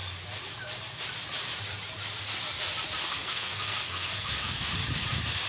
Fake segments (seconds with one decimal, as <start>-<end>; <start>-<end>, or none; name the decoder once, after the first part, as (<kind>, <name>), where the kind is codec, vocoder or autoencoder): 3.1-4.7 (codec, SNAC)